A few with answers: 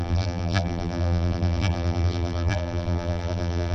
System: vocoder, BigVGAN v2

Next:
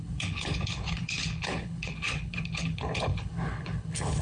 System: codec, HILCodec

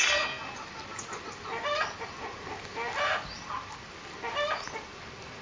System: none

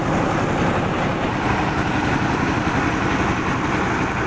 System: none